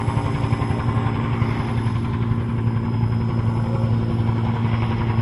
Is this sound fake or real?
real